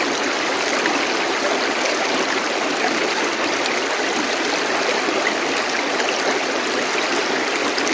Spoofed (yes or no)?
no